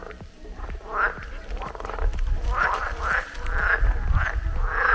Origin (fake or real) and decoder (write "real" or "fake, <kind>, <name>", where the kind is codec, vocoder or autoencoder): fake, vocoder, BigVGAN v2